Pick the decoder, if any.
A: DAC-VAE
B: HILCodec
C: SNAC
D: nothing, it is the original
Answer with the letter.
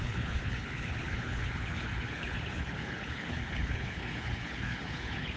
B